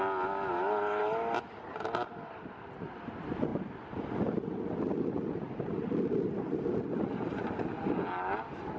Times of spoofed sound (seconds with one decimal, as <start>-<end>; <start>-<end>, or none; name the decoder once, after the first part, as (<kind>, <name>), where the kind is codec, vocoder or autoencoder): 1.0-2.9 (vocoder, BigVGAN v2); 3.5-6.8